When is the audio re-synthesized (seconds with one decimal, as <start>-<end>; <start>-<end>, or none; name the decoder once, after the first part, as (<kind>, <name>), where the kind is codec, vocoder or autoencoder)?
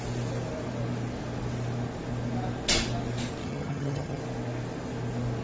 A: 3.4-4.2 (vocoder, HiFi-GAN)